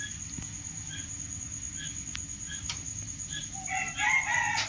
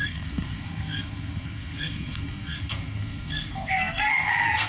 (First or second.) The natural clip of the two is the first